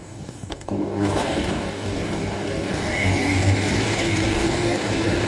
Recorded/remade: remade